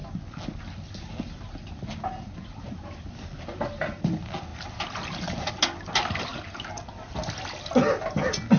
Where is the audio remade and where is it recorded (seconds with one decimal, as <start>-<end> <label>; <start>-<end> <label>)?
0.0-8.6 recorded